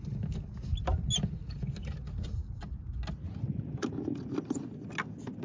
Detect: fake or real real